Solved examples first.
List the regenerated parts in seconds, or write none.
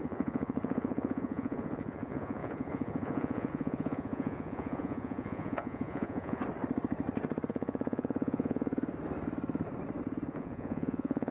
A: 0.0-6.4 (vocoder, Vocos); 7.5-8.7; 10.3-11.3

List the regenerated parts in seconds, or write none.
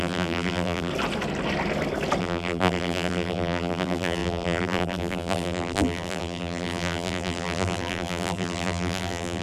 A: 0.0-0.9 (vocoder, BigVGAN v2); 2.2-9.4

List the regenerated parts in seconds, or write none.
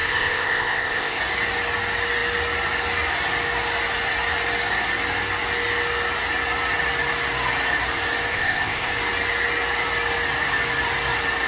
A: 0.0-1.2 (codec, ZipCodec); 8.3-8.9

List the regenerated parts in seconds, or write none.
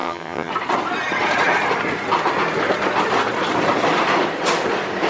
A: 0.0-0.5 (vocoder, HiFi-GAN)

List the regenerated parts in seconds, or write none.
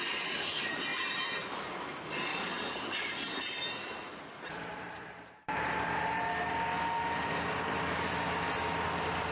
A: 2.3-3.1 (vocoder, BigVGAN v2); 4.1-5.9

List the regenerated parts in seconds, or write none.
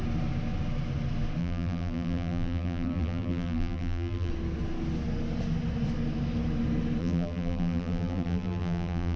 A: 1.4-4.3 (vocoder, BigVGAN v2); 7.0-9.2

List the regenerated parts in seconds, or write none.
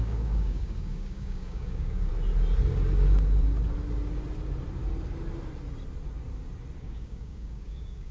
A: 0.0-2.1 (codec, DAC); 6.8-8.1